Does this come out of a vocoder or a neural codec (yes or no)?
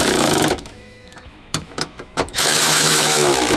yes